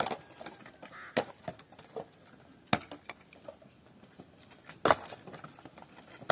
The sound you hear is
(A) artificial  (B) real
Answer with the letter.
B